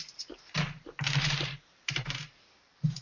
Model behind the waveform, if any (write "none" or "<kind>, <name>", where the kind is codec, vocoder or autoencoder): vocoder, BigVGAN v2